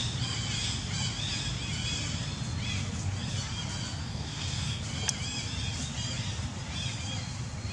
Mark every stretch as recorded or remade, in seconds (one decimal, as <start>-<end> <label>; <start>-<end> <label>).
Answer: 0.0-4.0 recorded; 4.0-4.8 remade; 4.8-7.7 recorded